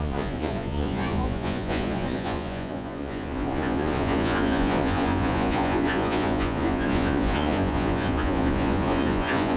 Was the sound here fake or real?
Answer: fake